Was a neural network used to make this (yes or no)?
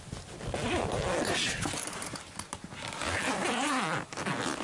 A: no